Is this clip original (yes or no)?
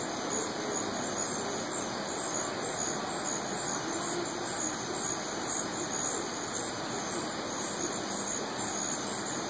yes